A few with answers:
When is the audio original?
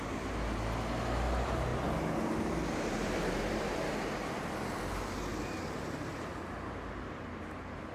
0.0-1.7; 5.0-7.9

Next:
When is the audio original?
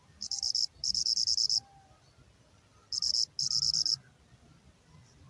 0.0-5.3